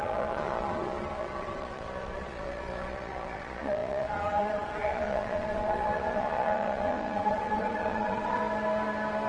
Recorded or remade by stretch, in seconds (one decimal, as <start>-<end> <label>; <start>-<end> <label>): 0.0-8.4 remade; 8.4-9.3 recorded